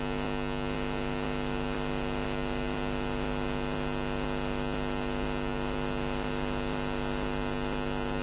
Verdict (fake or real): real